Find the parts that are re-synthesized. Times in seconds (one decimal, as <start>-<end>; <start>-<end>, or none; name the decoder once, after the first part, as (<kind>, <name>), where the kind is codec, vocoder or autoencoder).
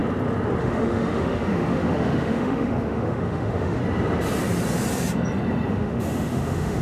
0.6-3.8 (autoencoder, DAC-VAE); 5.7-6.8